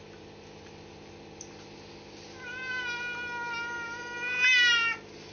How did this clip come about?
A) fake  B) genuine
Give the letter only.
B